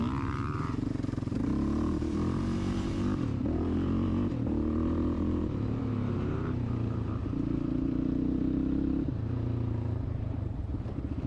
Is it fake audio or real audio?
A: fake